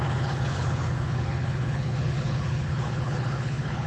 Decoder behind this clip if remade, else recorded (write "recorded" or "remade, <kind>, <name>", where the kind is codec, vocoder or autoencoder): remade, codec, HILCodec